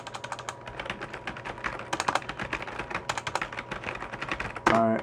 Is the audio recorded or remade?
recorded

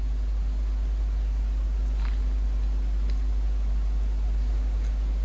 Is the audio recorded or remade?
recorded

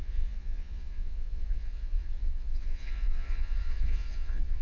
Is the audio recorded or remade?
remade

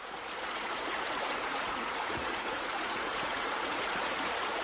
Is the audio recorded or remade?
remade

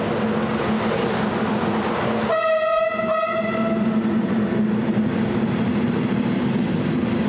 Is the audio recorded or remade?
recorded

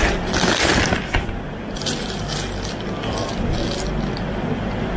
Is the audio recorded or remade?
recorded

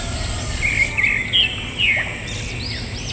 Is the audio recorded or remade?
recorded